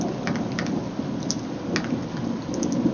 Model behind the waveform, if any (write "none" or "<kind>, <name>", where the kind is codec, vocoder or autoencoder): none